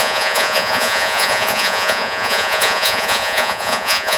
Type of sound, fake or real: fake